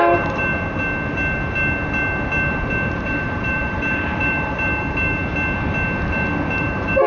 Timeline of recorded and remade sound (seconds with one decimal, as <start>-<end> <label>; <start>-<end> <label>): 0.0-0.5 remade; 0.5-2.9 recorded; 2.9-5.2 remade; 5.2-6.6 recorded; 6.6-7.1 remade